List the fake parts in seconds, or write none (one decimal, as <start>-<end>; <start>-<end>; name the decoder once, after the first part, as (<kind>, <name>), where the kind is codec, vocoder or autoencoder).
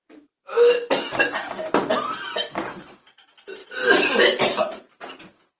3.6-4.9 (vocoder, BigVGAN v2)